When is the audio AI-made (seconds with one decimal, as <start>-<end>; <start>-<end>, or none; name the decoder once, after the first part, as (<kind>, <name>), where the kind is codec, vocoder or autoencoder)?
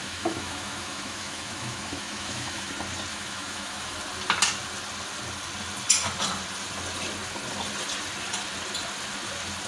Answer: 0.0-2.7 (autoencoder, DAC-VAE); 3.1-4.0